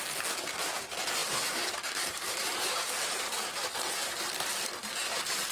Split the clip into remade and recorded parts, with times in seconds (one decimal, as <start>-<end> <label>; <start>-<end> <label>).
0.0-1.2 recorded; 1.2-3.9 remade; 3.9-5.5 recorded